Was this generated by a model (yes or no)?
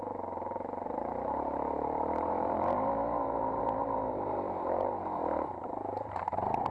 yes